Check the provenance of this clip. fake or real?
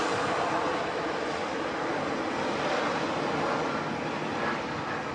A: real